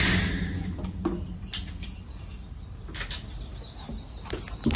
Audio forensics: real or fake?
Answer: real